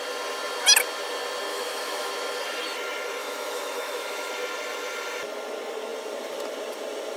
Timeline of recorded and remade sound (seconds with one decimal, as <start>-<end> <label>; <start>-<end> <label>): 0.0-1.5 recorded; 1.5-2.1 remade; 2.1-3.2 recorded; 3.2-4.3 remade; 4.3-7.2 recorded